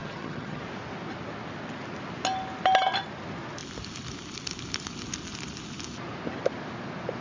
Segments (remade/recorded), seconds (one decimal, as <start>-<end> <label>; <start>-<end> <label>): 0.0-0.6 remade; 0.6-7.2 recorded